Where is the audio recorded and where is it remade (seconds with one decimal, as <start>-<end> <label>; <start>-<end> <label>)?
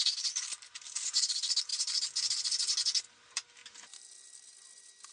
0.0-5.1 recorded